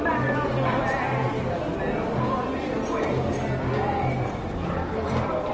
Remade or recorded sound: recorded